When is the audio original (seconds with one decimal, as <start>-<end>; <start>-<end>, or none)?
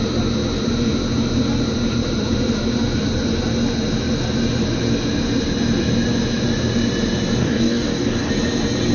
0.0-7.4; 8.3-8.9